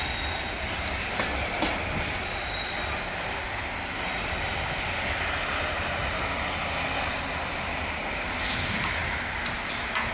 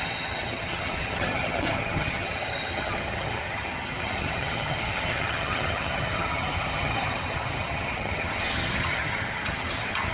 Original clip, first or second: first